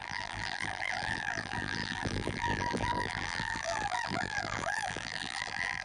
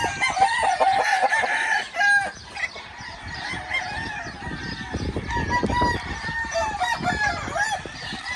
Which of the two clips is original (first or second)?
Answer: second